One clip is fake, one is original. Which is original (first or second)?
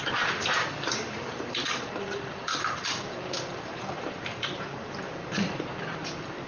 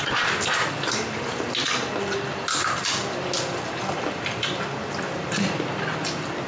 second